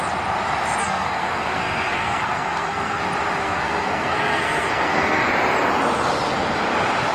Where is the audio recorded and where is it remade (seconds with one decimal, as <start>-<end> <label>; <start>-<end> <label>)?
0.0-0.8 recorded; 0.8-3.0 remade; 3.0-3.4 recorded; 3.4-5.3 remade; 5.3-7.1 recorded